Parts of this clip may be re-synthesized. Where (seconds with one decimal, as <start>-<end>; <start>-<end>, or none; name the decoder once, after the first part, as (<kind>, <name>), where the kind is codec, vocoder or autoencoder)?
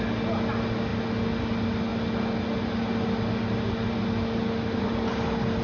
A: none